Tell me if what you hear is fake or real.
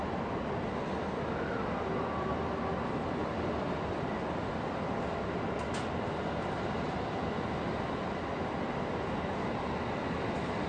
real